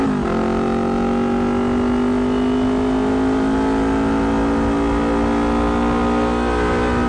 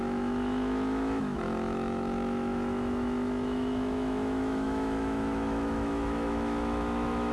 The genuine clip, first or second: first